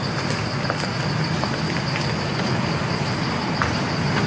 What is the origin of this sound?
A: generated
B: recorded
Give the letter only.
B